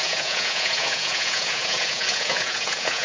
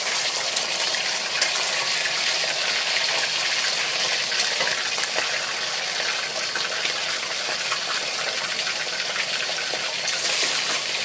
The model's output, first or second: first